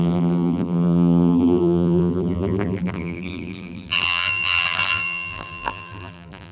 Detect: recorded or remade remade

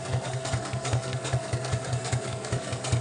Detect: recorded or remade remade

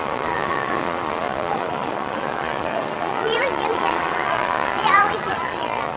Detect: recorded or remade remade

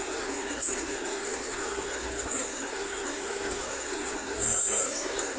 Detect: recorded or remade remade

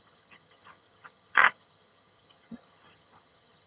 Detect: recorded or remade remade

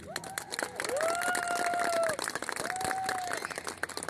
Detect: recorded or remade recorded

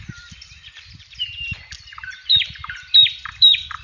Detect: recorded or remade remade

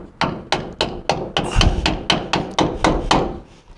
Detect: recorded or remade recorded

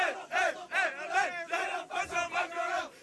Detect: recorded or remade recorded